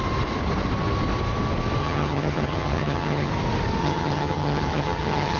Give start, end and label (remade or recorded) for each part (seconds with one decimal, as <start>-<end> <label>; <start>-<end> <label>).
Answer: 0.0-1.8 recorded; 1.8-3.3 remade; 3.3-3.8 recorded; 3.8-5.4 remade